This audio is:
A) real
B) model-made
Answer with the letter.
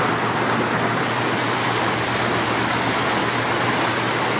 A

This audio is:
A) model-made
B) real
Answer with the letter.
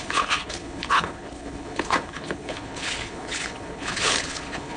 A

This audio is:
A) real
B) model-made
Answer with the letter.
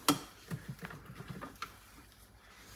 A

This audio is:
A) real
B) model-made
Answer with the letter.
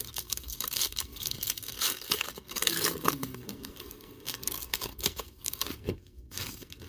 B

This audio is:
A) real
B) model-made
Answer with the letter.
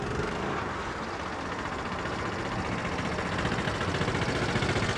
A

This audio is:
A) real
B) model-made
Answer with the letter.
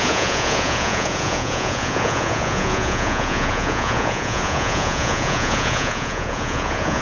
B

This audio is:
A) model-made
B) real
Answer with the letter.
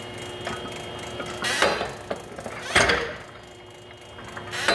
B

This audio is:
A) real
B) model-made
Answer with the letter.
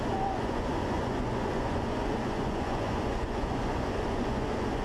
B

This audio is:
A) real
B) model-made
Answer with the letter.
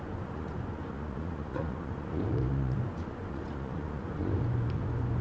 B